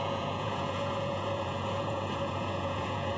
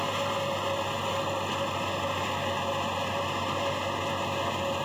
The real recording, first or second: second